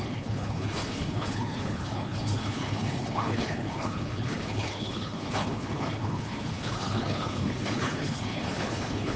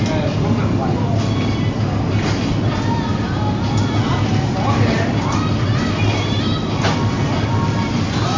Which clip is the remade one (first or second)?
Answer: first